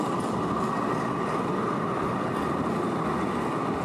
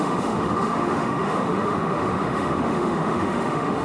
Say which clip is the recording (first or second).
first